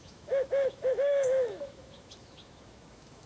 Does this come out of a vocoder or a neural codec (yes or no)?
yes